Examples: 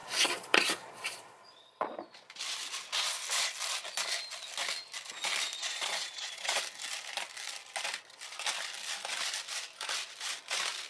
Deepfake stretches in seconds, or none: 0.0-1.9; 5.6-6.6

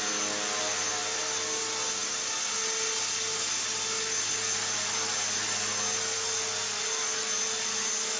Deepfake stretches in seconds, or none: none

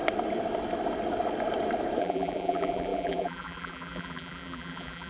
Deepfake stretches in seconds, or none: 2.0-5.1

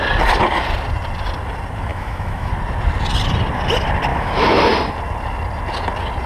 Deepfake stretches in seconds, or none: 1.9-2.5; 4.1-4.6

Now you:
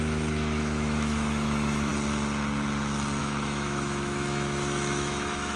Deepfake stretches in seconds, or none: 0.0-1.9; 3.2-5.6

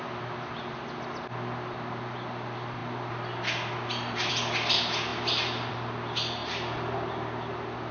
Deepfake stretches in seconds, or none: none